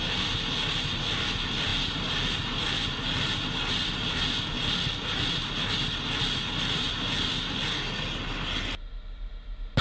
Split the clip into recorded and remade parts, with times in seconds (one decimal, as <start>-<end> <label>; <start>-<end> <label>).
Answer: 0.0-9.8 recorded